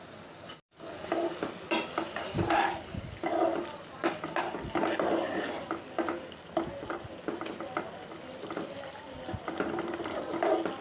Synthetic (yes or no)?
no